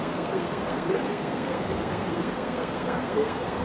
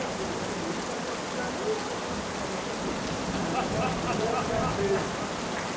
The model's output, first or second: first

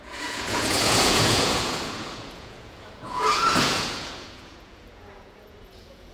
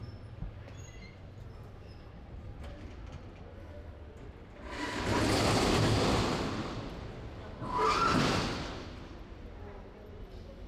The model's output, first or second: first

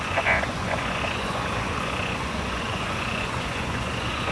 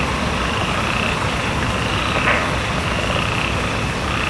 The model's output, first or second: first